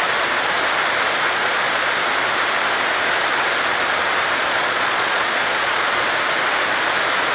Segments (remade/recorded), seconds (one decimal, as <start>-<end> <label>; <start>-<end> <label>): 0.0-1.4 recorded; 1.4-2.0 remade; 2.0-4.4 recorded; 4.4-5.7 remade; 5.7-7.3 recorded